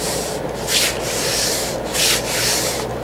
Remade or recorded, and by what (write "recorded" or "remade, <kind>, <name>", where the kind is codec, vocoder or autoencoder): remade, vocoder, BigVGAN v2